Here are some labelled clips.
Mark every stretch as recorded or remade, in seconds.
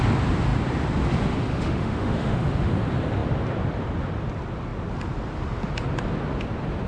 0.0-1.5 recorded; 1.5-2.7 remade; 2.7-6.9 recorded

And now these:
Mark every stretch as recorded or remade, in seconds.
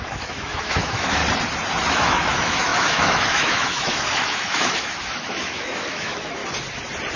0.0-1.2 remade; 1.2-1.9 recorded; 1.9-6.4 remade; 6.4-7.2 recorded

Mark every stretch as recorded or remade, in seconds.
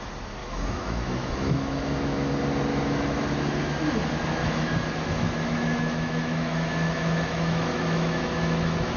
0.0-0.4 recorded; 0.4-2.3 remade; 2.3-2.7 recorded; 2.7-3.2 remade; 3.2-4.4 recorded; 4.4-9.0 remade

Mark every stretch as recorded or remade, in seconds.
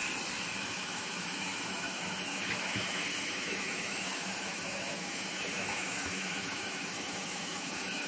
0.0-0.6 recorded; 0.6-8.1 remade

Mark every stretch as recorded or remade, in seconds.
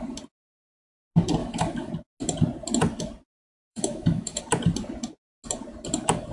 0.0-1.4 recorded; 1.4-1.9 remade; 1.9-3.7 recorded; 3.7-4.4 remade; 4.4-6.3 recorded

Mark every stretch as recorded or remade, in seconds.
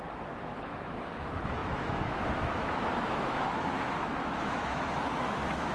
0.0-5.7 remade